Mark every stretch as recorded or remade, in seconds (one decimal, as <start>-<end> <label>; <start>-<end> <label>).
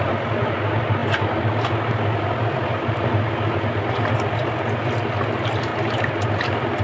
0.0-6.8 recorded